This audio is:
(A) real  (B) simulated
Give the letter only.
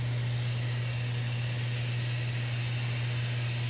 A